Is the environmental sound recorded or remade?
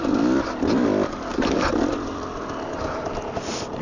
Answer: remade